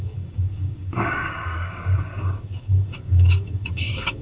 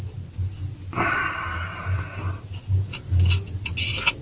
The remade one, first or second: first